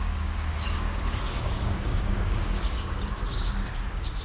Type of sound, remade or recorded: remade